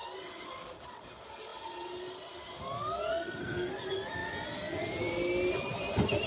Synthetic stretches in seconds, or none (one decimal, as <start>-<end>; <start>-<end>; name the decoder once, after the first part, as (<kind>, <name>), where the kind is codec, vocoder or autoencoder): 3.1-3.7 (codec, SNAC)